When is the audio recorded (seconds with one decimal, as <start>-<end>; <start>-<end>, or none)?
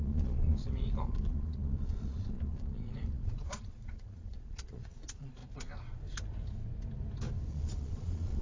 5.4-7.5